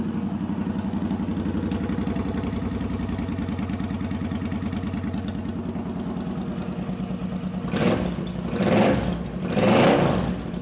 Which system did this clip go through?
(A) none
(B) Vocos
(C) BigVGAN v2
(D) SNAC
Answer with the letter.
A